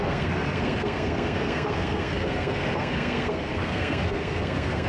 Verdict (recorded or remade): remade